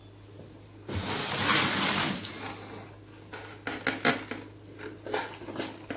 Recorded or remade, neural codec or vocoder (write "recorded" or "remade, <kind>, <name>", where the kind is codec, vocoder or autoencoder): recorded